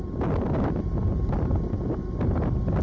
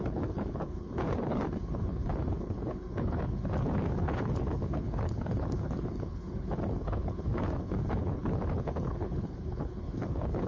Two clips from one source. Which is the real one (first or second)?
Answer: first